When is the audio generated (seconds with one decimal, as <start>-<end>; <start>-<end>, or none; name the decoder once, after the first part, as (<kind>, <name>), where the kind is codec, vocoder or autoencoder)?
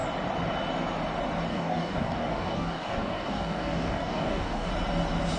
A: 1.5-4.7 (codec, DAC)